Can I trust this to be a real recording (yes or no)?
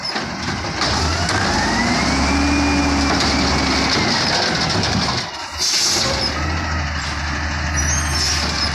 yes